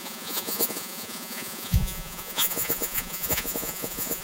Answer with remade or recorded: remade